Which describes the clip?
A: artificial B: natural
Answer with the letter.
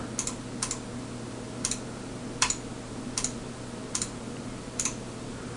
B